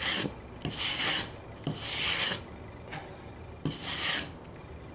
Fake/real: real